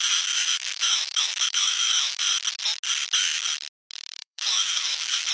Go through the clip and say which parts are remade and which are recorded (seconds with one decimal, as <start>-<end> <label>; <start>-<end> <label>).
0.0-0.4 recorded; 0.4-2.3 remade; 2.3-4.2 recorded; 4.2-5.3 remade